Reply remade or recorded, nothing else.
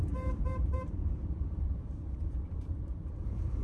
remade